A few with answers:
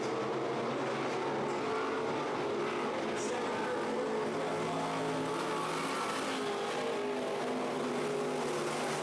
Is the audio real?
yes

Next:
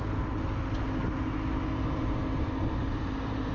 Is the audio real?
yes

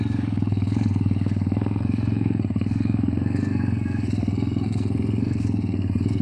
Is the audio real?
no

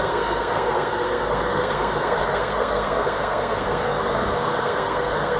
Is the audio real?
no